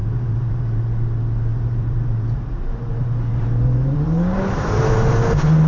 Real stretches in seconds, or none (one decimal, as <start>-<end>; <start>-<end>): 0.8-1.5; 4.9-5.7